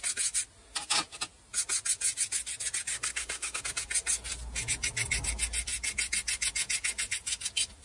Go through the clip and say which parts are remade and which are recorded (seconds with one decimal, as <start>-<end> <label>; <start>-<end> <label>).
0.0-2.9 recorded; 2.9-3.6 remade; 3.6-7.8 recorded